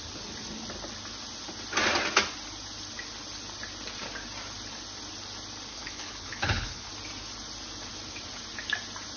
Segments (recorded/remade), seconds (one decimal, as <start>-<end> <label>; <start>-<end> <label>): 0.0-5.7 recorded; 5.7-6.9 remade; 6.9-9.2 recorded